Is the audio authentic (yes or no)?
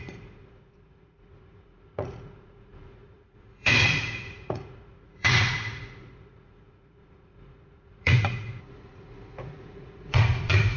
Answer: no